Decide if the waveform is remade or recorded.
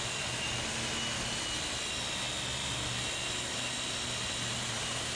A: recorded